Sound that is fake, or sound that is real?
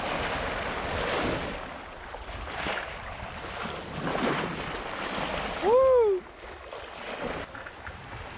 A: real